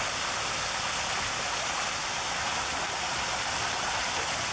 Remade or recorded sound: recorded